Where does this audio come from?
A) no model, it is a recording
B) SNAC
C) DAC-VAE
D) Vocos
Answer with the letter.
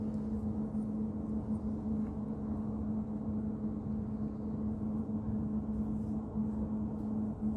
A